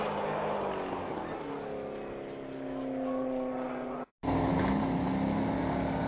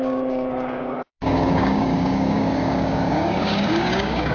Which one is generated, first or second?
second